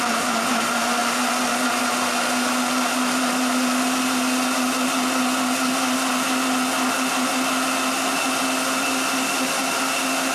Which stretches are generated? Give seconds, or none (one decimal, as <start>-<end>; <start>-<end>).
none

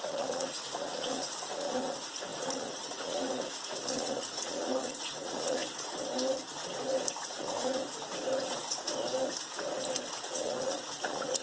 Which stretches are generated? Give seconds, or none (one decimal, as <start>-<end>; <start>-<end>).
0.0-5.6; 7.3-7.8; 10.1-11.4

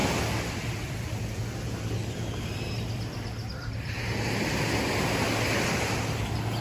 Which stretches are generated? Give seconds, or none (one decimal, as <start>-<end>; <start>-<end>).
0.0-4.0

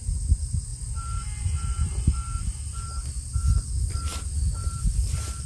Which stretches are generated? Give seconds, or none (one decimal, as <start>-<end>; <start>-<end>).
none

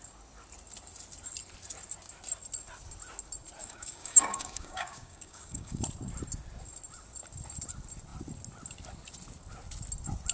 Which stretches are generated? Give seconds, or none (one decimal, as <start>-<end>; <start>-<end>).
3.6-5.8

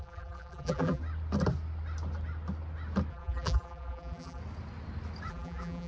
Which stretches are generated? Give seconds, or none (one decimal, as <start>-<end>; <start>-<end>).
0.0-1.0; 3.1-4.4; 5.3-5.9

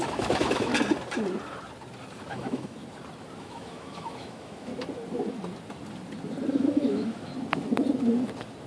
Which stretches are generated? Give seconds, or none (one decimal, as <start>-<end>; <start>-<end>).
0.0-0.7; 2.3-2.8; 3.4-4.7; 6.5-7.3